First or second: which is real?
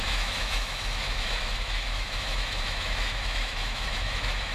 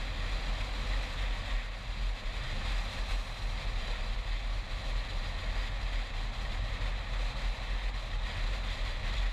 second